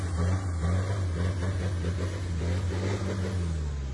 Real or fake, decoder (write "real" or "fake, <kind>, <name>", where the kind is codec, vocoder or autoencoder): real